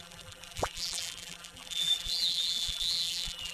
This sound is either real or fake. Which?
fake